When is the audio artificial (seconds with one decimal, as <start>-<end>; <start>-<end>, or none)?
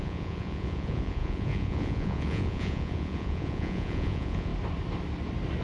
0.0-4.5